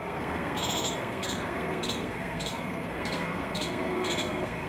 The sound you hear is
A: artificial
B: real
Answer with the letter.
A